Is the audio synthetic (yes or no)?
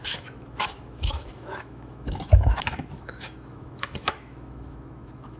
yes